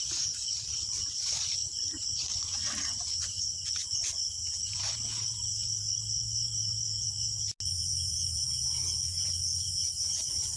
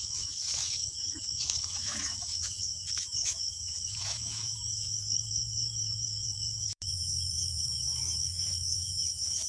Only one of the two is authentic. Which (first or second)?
first